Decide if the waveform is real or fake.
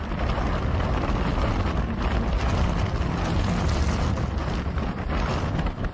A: real